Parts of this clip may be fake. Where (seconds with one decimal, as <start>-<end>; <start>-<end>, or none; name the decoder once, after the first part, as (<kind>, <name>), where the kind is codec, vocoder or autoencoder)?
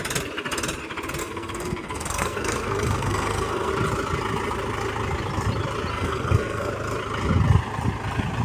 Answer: 1.2-3.7 (codec, SNAC); 5.9-6.7